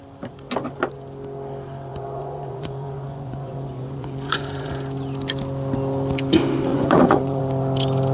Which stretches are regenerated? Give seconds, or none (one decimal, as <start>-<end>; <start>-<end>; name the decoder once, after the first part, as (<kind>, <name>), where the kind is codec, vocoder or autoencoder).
1.9-4.7 (vocoder, Vocos); 6.7-7.4